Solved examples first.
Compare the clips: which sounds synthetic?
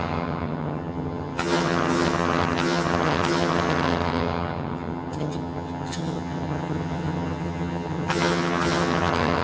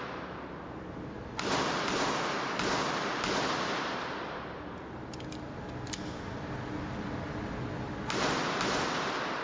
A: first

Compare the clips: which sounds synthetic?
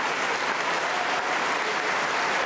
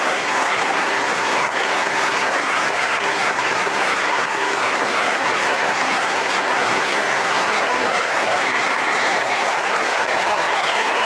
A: second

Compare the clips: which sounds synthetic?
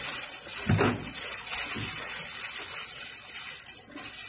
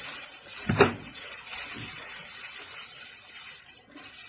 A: second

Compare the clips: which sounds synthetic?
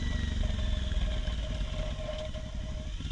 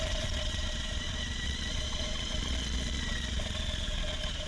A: second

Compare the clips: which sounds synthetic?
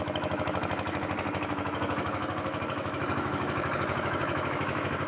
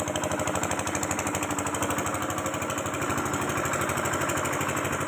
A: first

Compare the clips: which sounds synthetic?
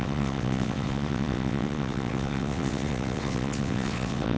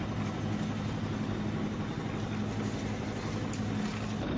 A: first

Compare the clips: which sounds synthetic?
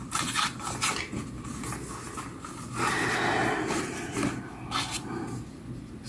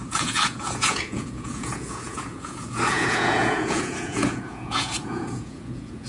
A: second